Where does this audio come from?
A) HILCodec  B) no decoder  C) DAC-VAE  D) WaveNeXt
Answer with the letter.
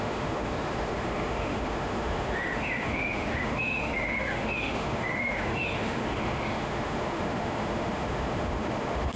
C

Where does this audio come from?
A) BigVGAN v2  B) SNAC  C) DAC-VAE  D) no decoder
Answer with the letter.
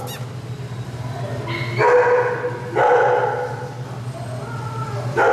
D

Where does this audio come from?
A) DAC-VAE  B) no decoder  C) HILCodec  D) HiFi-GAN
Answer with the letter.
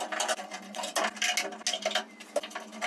B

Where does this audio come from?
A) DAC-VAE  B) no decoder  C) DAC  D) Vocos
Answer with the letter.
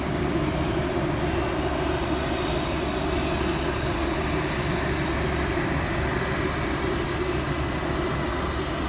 B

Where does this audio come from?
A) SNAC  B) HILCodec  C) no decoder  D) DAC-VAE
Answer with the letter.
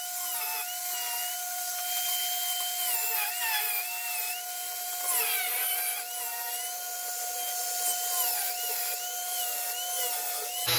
C